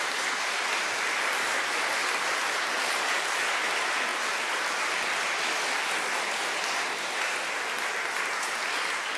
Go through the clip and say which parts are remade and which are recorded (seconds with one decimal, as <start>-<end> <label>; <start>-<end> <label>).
0.0-9.2 recorded